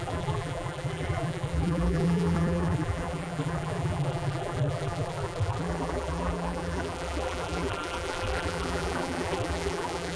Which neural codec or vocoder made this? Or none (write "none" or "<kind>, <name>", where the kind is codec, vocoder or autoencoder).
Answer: vocoder, BigVGAN v2